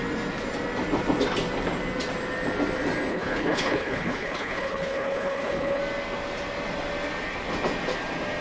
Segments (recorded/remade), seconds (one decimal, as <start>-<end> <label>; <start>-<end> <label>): 0.0-3.1 recorded; 3.1-5.8 remade; 5.8-8.4 recorded